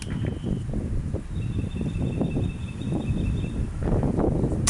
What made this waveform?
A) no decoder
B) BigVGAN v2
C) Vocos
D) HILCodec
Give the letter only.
A